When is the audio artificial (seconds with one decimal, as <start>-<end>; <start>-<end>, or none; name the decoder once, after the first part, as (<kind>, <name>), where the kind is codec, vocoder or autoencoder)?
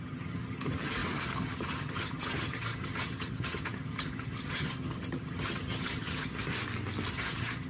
0.0-6.5 (vocoder, HiFi-GAN); 7.1-7.7